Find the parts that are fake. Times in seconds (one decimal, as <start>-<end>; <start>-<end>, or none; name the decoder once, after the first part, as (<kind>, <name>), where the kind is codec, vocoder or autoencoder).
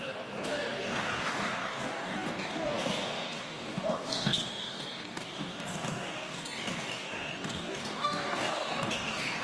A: 0.0-9.4 (codec, DAC)